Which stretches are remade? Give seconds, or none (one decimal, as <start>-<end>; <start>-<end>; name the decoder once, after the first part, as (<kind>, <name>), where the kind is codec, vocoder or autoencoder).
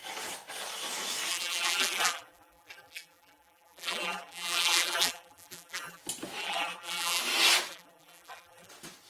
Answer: 1.3-6.0 (vocoder, BigVGAN v2); 6.4-7.2; 7.7-8.7